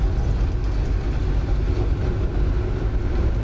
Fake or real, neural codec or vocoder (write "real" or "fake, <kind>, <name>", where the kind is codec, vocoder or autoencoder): real